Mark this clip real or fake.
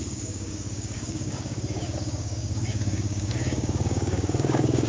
fake